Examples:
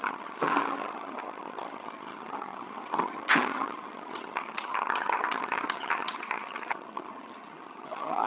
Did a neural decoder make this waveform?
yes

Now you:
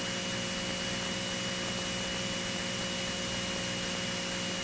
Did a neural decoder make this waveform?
no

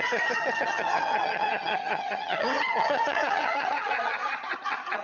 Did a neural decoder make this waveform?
yes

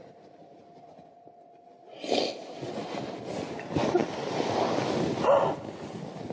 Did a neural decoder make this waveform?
no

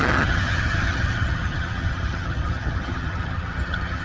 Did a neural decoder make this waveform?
yes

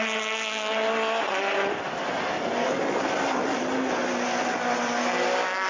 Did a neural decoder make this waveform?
no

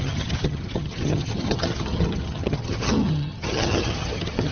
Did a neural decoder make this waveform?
yes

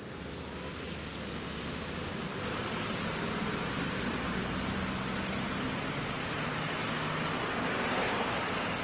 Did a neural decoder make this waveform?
no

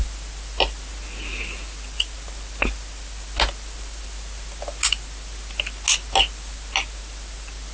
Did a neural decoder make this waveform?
no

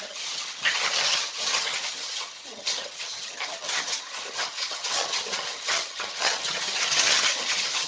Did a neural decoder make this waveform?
yes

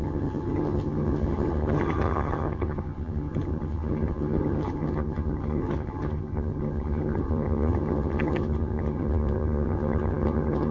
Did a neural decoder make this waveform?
yes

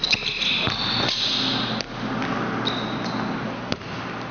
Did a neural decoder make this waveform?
no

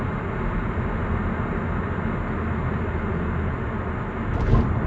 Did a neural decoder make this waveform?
no